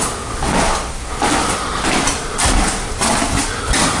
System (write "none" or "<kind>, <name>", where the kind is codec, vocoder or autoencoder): none